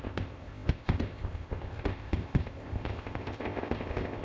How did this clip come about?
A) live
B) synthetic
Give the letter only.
B